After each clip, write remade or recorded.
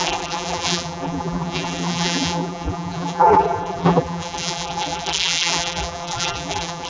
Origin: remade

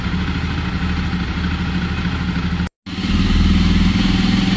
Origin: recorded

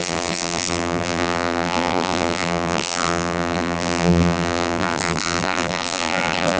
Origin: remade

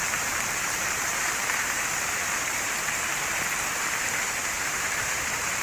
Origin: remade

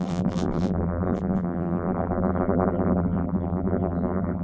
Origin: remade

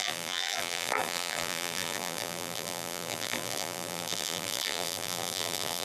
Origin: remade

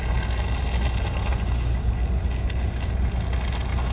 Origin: recorded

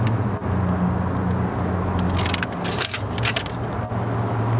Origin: recorded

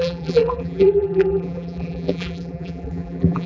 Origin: remade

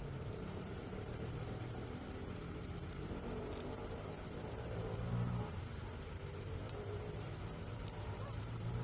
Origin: remade